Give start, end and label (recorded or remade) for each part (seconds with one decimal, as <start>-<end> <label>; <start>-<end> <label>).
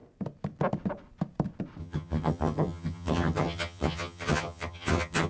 0.0-1.8 recorded; 1.8-5.3 remade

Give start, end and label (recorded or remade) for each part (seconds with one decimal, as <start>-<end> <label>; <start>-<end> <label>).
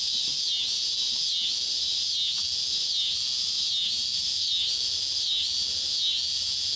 0.0-6.8 recorded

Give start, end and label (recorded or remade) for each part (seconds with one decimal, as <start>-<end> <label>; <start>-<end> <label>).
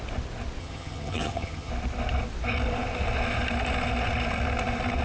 0.0-0.6 recorded; 0.6-1.7 remade; 1.7-5.0 recorded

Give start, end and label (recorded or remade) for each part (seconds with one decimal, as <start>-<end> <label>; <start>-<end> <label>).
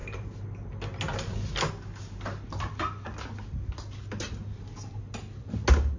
0.0-6.0 recorded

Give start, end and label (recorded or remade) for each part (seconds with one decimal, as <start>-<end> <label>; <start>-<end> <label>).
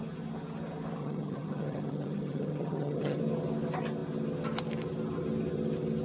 0.0-1.0 recorded; 1.0-3.2 remade; 3.2-6.0 recorded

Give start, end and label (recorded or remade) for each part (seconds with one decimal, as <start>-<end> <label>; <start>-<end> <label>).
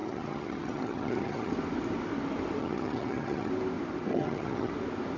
0.0-1.5 remade; 1.5-2.6 recorded; 2.6-3.5 remade; 3.5-4.1 recorded; 4.1-4.7 remade; 4.7-5.2 recorded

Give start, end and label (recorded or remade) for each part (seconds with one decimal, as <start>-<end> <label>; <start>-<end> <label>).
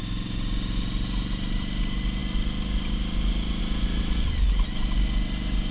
0.0-5.7 recorded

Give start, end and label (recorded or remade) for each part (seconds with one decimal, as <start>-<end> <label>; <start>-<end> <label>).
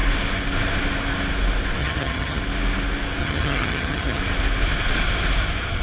0.0-1.8 recorded; 1.8-2.4 remade; 2.4-3.2 recorded; 3.2-4.2 remade; 4.2-5.8 recorded